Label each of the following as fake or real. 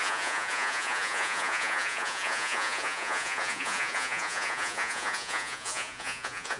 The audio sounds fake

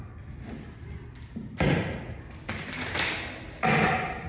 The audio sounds real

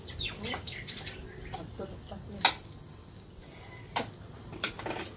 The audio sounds real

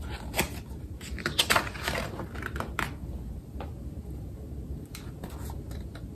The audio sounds real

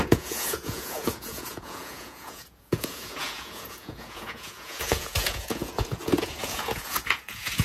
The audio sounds fake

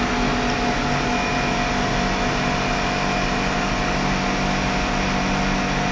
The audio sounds real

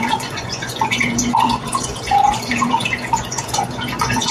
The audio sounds fake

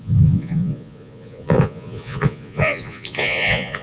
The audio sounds fake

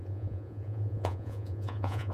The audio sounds fake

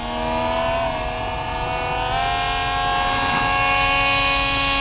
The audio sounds real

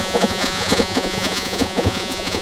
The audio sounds fake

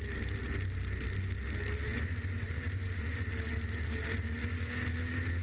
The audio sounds real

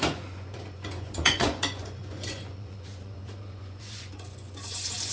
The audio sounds fake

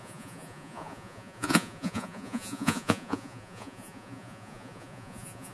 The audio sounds fake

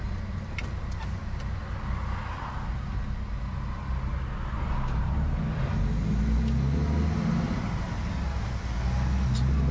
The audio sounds real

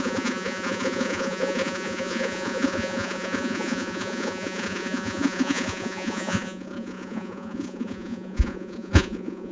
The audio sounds fake